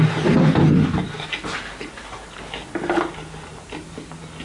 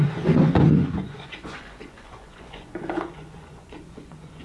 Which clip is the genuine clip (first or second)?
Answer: first